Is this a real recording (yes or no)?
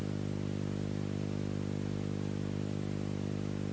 yes